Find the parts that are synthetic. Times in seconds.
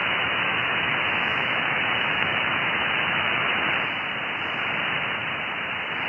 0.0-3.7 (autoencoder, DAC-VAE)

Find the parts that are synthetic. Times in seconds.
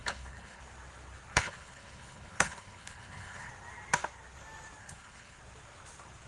0.0-0.6 (codec, HILCodec); 1.3-3.5; 4.8-5.4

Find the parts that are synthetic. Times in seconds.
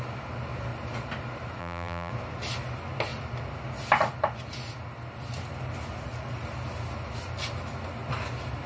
1.6-2.1 (vocoder, BigVGAN v2)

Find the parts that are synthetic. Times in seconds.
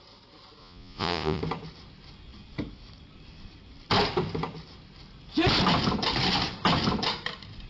0.6-1.4 (vocoder, Vocos)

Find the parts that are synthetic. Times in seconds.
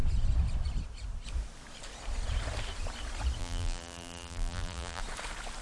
3.4-5.0 (vocoder, BigVGAN v2)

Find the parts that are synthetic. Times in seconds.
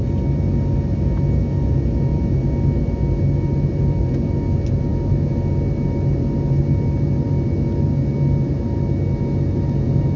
none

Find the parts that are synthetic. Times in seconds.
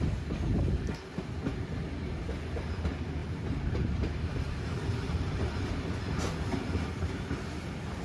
3.2-5.8 (vocoder, BigVGAN v2)